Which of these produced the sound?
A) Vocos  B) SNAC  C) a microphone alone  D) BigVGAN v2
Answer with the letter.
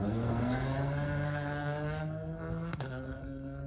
B